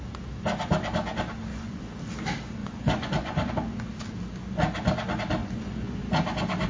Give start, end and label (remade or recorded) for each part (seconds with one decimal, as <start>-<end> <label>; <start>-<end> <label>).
0.0-1.5 recorded; 1.5-2.0 remade; 2.0-2.6 recorded; 2.6-3.5 remade; 3.5-5.4 recorded; 5.4-6.0 remade; 6.0-6.7 recorded